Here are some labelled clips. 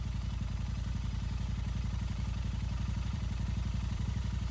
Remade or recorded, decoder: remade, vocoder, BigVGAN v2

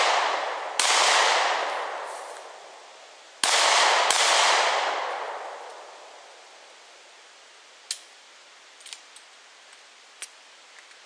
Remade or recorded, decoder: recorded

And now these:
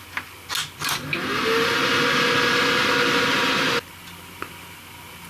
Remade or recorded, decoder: recorded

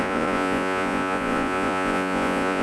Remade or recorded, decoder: remade, vocoder, Vocos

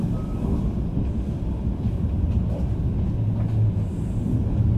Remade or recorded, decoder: recorded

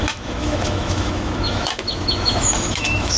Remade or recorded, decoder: remade, autoencoder, DAC-VAE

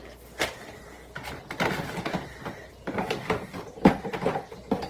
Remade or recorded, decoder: recorded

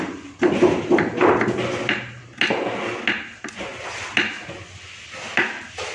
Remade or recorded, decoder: recorded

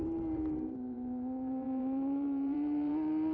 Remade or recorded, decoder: remade, vocoder, BigVGAN v2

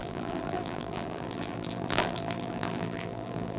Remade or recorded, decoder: remade, vocoder, BigVGAN v2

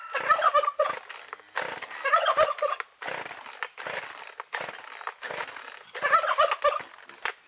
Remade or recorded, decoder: recorded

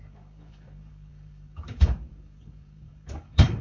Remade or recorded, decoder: remade, codec, DAC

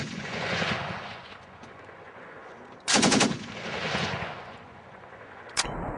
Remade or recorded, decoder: remade, vocoder, Vocos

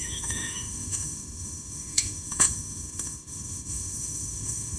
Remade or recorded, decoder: remade, autoencoder, DAC-VAE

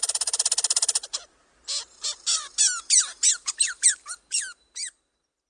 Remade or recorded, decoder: recorded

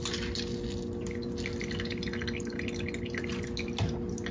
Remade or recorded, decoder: recorded